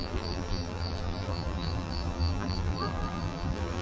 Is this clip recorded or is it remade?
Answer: remade